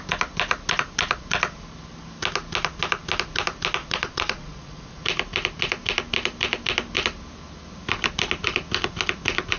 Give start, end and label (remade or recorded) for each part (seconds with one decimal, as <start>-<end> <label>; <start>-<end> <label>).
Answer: 0.0-3.8 recorded; 3.8-5.0 remade; 5.0-9.6 recorded